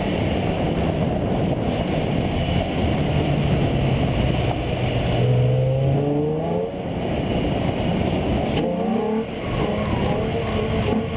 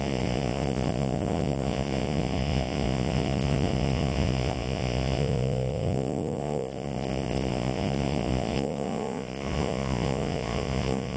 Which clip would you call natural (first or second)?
first